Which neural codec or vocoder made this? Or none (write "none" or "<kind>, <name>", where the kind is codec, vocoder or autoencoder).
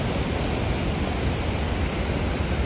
none